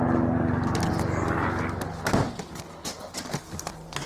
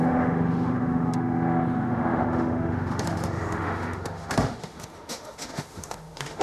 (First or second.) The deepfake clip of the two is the second